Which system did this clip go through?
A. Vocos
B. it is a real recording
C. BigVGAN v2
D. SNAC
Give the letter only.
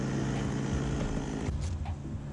B